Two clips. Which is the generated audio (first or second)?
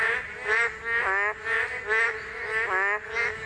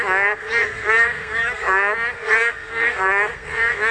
second